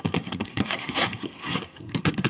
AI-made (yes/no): yes